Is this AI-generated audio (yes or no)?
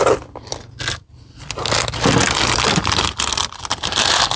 yes